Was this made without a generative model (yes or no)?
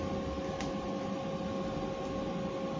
yes